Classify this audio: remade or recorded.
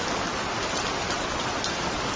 recorded